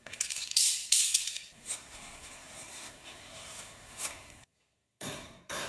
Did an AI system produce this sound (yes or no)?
yes